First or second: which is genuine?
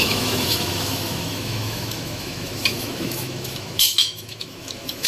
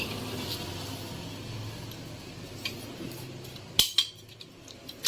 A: second